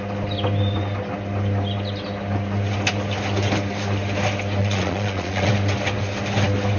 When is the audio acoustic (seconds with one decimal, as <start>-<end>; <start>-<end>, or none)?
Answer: 0.0-4.6; 5.5-6.8